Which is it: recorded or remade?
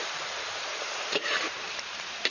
remade